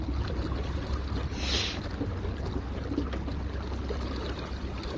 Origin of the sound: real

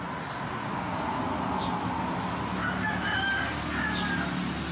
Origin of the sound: real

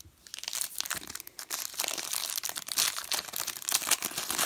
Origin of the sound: real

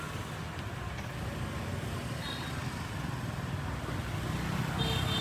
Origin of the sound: real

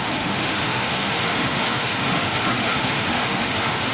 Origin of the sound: fake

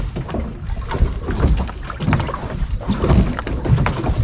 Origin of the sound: real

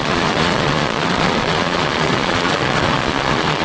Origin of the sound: fake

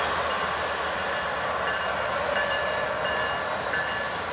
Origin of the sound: real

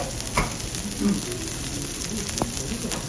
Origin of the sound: real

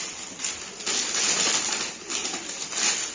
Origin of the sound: real